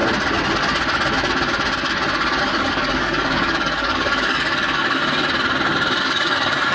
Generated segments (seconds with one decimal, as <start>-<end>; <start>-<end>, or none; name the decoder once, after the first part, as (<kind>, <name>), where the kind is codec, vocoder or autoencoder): 2.4-5.0 (codec, DAC); 6.0-6.7